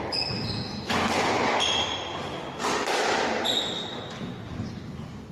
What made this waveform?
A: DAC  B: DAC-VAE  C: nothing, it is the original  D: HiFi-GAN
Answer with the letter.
C